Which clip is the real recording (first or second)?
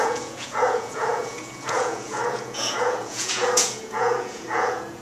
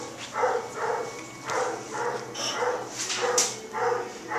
second